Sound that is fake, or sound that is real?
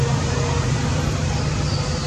real